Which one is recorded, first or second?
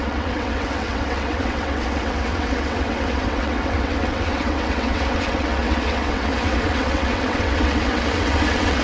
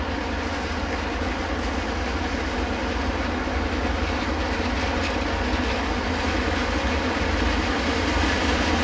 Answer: second